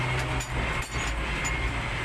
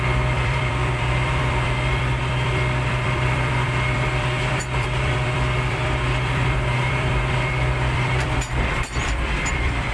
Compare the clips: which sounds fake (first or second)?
second